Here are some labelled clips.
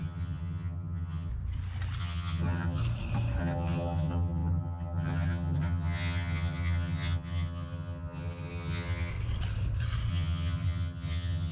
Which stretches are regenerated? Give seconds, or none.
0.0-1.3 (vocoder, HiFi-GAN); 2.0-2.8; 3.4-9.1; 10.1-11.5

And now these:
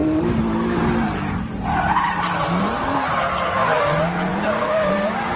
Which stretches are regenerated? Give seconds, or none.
0.0-3.2 (vocoder, BigVGAN v2); 4.3-5.4

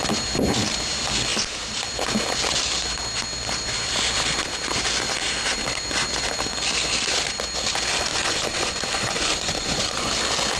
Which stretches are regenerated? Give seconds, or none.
8.1-10.1 (vocoder, Vocos)

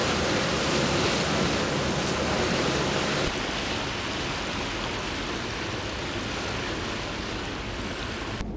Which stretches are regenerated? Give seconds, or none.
none